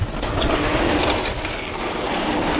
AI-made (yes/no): no